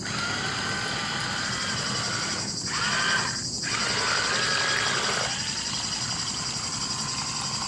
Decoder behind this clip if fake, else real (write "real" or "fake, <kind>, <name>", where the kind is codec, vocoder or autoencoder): real